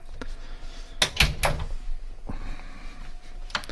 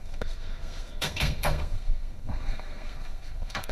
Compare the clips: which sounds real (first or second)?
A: first